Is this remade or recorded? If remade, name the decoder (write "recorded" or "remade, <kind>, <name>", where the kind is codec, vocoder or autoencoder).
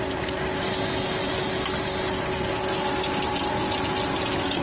recorded